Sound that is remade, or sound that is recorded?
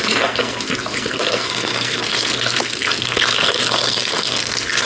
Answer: remade